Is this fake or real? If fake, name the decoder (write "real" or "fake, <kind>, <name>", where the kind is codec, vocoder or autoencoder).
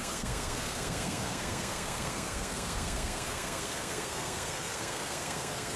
fake, codec, SNAC